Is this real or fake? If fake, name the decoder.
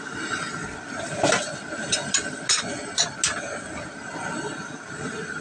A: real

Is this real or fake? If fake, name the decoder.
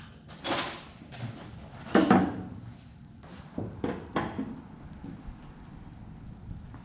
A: real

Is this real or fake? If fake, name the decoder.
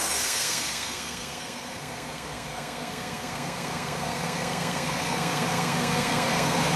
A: fake, codec, SNAC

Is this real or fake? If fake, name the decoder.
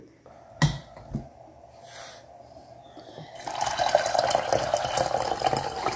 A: real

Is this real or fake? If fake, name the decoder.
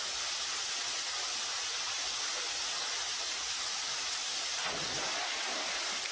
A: real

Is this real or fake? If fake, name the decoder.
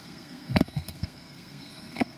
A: fake, codec, SNAC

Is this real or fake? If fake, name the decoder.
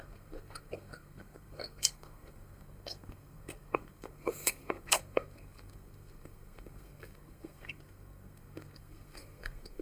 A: fake, codec, SNAC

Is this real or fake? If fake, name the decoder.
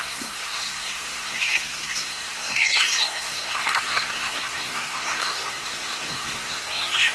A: fake, codec, SNAC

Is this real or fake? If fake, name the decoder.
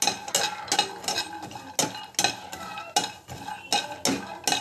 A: real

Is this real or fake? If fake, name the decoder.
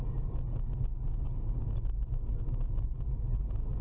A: real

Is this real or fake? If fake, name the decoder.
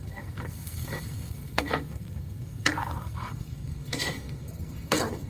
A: fake, codec, SNAC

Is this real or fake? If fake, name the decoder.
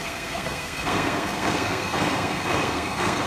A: fake, codec, SNAC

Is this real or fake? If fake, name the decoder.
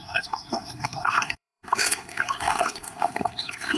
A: fake, codec, SNAC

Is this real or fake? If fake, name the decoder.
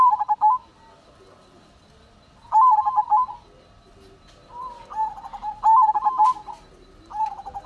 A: real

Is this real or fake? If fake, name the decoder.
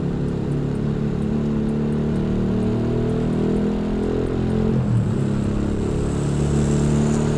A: real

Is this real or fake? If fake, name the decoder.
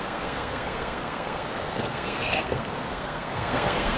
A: fake, codec, SNAC